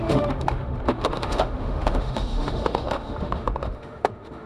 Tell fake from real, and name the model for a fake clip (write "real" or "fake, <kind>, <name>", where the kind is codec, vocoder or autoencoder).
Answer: fake, autoencoder, DAC-VAE